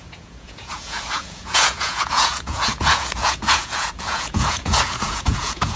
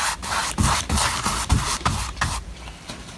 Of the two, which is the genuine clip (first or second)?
second